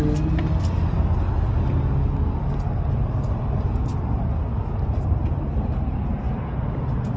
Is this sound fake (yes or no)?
no